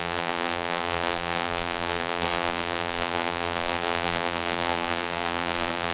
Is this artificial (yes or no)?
yes